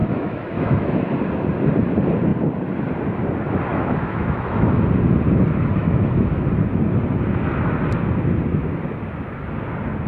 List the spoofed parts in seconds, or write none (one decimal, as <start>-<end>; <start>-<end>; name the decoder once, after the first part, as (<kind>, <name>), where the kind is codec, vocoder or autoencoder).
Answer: 0.0-1.1 (autoencoder, DAC-VAE); 3.7-4.8; 5.8-6.4